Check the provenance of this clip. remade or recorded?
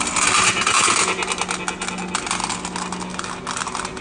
recorded